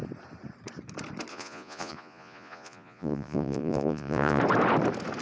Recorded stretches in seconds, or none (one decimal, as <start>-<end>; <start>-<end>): 0.0-1.3; 4.4-5.2